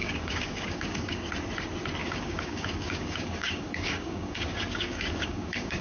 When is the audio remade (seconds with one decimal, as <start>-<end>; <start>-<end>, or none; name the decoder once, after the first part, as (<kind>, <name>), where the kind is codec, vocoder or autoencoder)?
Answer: 0.0-1.3 (codec, DAC); 2.0-5.8